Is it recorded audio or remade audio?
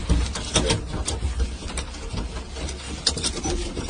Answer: remade